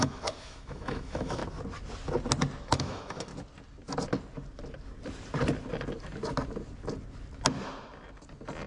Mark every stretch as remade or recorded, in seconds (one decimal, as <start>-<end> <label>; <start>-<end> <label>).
0.0-1.4 remade; 1.4-2.6 recorded; 2.6-3.3 remade; 3.3-8.7 recorded